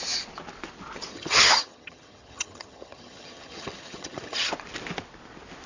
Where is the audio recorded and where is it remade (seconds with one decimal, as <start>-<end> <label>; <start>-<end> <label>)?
0.0-1.1 recorded; 1.1-4.5 remade; 4.5-5.7 recorded